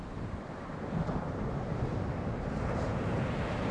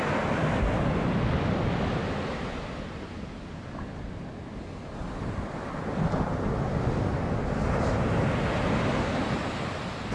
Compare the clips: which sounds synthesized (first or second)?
first